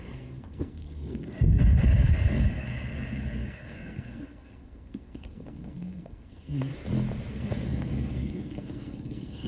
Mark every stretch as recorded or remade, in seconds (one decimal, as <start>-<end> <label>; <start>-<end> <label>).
0.0-6.7 remade; 6.7-7.3 recorded; 7.3-9.5 remade